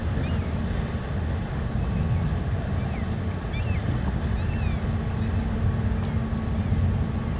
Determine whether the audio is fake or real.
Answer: real